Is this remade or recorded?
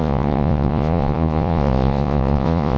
remade